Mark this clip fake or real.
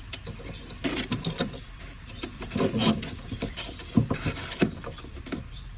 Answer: fake